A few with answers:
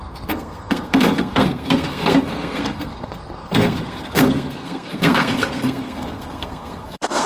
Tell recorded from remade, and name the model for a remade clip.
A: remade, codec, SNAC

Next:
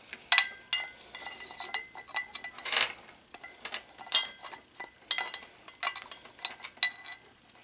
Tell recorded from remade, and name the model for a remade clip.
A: recorded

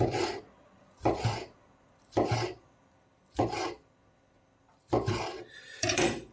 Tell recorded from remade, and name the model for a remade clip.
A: remade, vocoder, BigVGAN v2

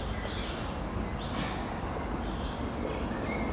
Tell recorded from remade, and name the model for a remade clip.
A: recorded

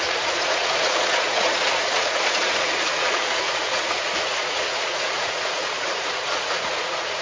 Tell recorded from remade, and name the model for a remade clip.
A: remade, vocoder, Vocos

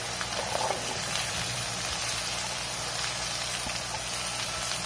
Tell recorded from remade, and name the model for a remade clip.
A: recorded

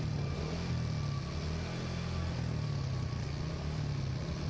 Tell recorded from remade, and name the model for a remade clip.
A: recorded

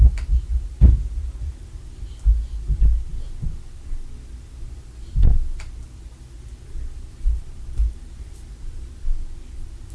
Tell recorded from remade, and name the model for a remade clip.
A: recorded